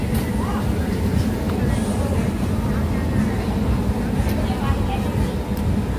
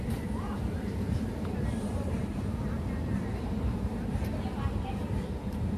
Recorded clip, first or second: first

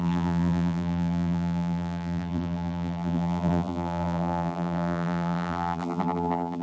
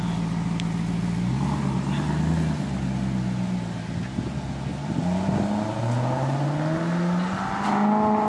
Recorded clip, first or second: second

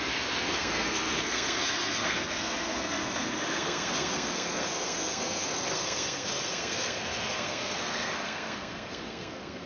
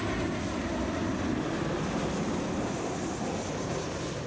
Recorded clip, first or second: second